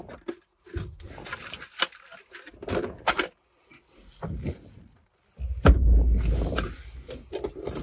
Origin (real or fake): real